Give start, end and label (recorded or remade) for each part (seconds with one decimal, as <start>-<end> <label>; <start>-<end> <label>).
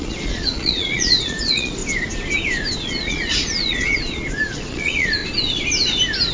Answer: 0.0-1.8 remade; 1.8-2.8 recorded; 2.8-5.2 remade; 5.2-6.3 recorded